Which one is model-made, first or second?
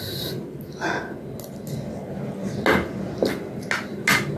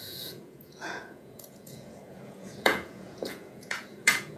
second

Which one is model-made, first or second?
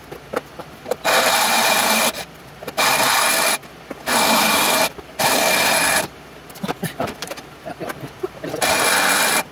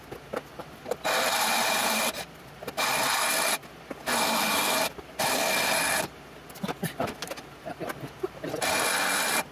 first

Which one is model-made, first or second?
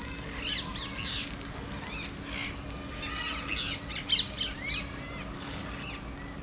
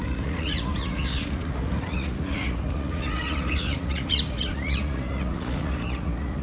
second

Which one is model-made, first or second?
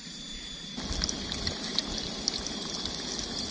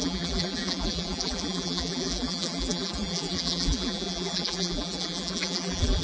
second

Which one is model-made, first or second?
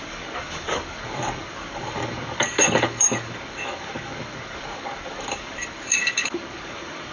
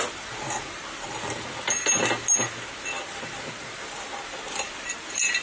first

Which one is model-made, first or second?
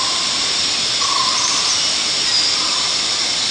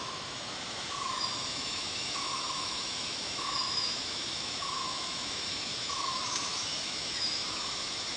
second